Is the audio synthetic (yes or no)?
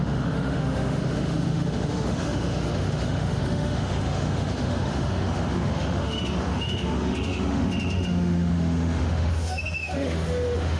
yes